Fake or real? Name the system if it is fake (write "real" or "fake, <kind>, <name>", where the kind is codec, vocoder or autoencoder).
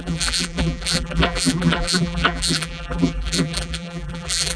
fake, vocoder, BigVGAN v2